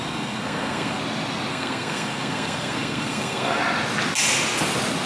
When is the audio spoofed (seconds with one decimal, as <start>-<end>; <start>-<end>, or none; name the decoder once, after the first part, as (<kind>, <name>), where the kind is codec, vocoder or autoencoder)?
0.0-1.0 (codec, SNAC); 1.5-3.6